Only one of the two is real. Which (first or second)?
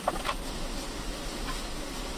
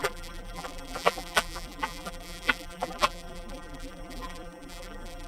first